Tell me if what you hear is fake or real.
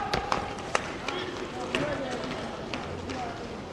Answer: real